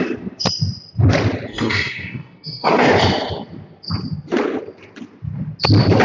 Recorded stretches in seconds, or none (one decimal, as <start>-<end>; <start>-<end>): 0.0-1.5; 2.9-6.0